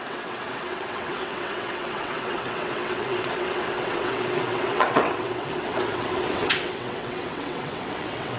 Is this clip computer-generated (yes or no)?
yes